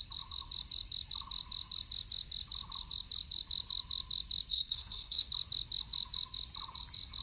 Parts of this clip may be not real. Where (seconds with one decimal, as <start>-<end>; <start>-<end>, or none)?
4.5-5.3

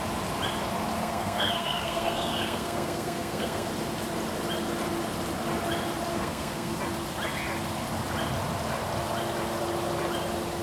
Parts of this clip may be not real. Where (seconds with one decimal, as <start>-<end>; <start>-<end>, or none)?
1.0-3.7; 6.1-6.8